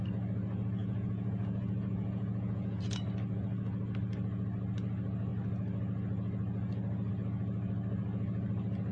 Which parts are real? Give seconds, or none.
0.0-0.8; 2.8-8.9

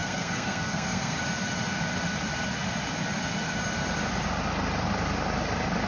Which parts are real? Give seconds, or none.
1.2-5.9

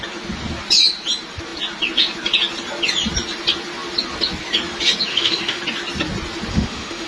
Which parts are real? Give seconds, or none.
0.0-5.1; 5.6-6.5

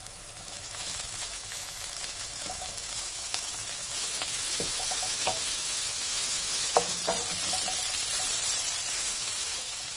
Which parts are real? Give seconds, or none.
7.0-8.9

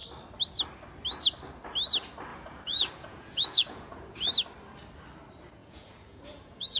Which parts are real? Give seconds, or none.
0.0-2.3; 4.3-5.6

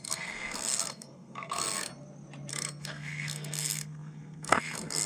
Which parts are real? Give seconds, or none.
1.9-2.5